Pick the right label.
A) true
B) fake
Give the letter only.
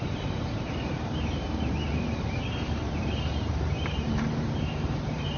B